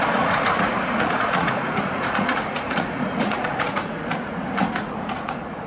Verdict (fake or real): fake